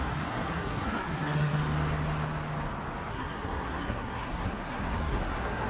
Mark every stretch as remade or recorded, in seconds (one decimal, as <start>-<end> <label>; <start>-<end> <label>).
0.0-1.6 remade; 1.6-3.1 recorded; 3.1-5.7 remade